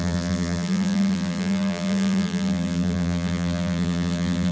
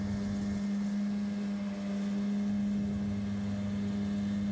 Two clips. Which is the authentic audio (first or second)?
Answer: second